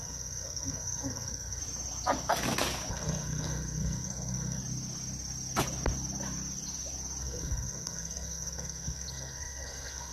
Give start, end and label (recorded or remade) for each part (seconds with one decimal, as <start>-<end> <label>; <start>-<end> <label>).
0.0-1.6 remade; 1.6-2.9 recorded; 2.9-4.6 remade; 4.6-7.2 recorded; 7.2-10.1 remade